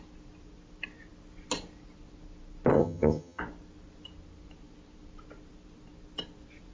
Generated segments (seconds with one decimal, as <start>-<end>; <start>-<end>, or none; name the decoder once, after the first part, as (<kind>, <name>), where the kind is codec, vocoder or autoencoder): 2.7-3.4 (vocoder, HiFi-GAN)